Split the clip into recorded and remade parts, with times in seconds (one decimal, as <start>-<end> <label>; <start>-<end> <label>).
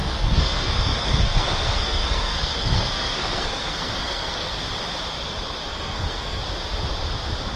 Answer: 0.0-4.6 remade; 4.6-5.7 recorded; 5.7-6.4 remade; 6.4-7.6 recorded